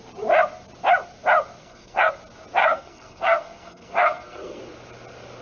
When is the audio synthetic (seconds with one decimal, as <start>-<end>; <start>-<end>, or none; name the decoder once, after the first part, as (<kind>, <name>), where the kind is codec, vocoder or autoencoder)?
1.6-2.1 (codec, SNAC); 2.6-4.6